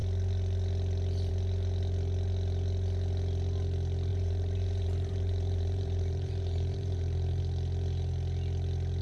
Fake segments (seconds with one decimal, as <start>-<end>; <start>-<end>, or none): 4.1-7.4